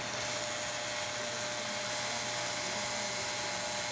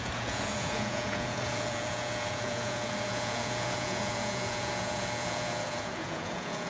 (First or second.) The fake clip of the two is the second